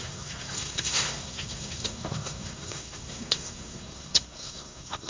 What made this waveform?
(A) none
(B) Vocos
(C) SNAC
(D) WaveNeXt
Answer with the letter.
C